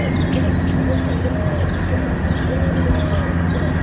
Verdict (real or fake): real